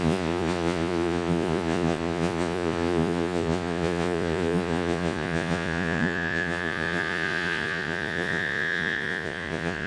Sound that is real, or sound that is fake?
fake